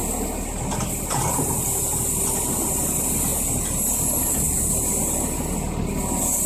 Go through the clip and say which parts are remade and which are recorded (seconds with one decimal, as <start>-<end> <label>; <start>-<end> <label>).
0.0-6.5 recorded